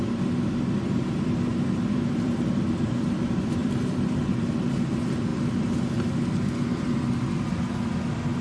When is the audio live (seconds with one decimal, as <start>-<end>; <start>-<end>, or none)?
5.3-7.4

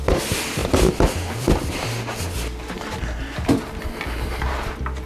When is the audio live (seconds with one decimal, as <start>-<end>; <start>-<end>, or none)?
0.0-5.1

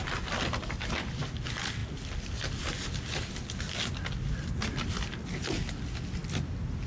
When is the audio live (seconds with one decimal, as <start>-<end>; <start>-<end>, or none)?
0.0-6.9

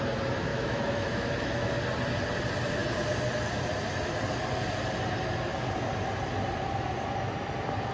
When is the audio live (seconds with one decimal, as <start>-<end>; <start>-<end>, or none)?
0.0-0.5; 1.7-7.9

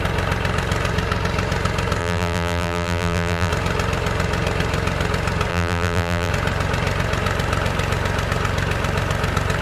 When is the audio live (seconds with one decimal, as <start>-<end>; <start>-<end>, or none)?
0.0-2.0; 3.5-5.5; 6.3-9.6